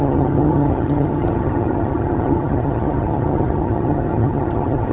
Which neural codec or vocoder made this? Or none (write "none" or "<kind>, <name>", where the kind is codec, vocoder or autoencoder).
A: vocoder, HiFi-GAN